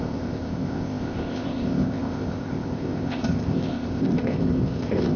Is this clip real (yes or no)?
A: no